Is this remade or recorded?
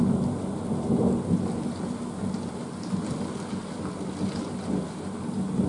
recorded